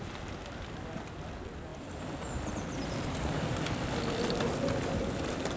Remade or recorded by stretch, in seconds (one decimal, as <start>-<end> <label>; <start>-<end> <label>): 0.0-5.6 recorded